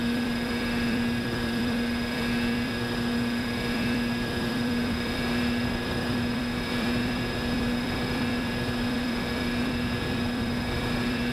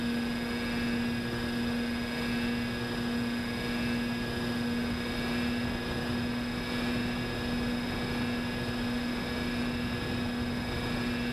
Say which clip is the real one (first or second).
second